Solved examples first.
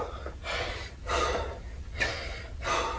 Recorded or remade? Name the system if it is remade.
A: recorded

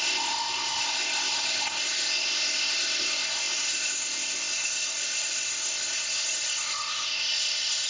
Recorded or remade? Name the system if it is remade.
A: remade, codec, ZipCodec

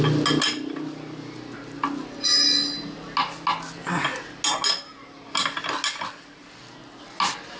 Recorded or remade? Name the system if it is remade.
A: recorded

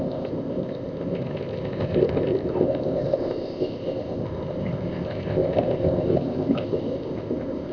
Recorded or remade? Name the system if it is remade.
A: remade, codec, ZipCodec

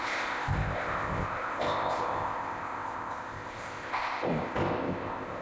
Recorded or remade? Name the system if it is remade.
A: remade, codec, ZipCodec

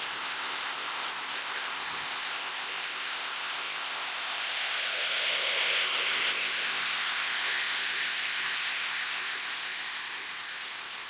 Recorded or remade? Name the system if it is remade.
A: remade, codec, ZipCodec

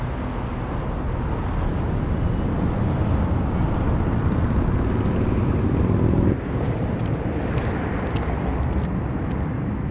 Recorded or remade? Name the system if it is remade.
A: recorded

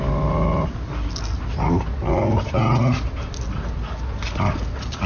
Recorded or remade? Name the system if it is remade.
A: recorded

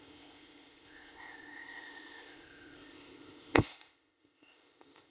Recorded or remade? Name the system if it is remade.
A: remade, codec, ZipCodec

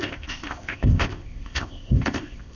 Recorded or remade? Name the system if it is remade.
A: remade, codec, ZipCodec